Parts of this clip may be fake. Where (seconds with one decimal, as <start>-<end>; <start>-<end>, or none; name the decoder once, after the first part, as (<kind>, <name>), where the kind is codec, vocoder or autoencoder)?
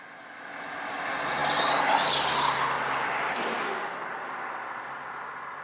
none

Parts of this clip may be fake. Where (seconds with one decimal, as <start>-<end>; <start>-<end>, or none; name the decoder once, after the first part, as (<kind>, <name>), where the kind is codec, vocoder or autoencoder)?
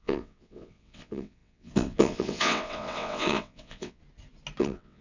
0.0-4.0 (vocoder, WaveNeXt); 4.6-5.0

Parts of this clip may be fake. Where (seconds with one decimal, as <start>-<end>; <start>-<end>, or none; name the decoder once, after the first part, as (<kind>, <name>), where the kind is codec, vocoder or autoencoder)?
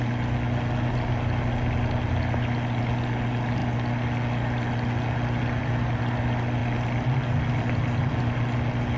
none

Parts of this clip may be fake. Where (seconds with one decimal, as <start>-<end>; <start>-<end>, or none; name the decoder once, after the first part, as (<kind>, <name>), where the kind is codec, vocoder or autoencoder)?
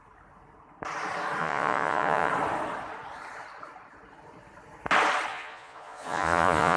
1.4-2.3 (vocoder, Vocos); 5.3-6.8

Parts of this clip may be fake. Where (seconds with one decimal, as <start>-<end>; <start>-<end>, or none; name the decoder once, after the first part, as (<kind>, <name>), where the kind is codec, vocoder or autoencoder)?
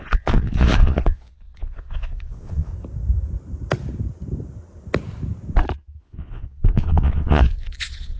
0.0-2.7 (vocoder, Vocos); 6.0-8.2